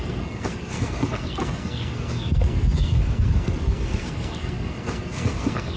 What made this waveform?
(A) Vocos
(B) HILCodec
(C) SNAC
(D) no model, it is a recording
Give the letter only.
C